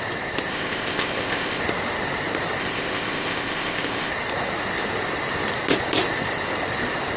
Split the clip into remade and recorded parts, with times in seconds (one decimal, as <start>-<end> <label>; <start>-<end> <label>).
0.0-0.5 recorded; 0.5-1.6 remade; 1.6-2.6 recorded; 2.6-4.1 remade; 4.1-7.2 recorded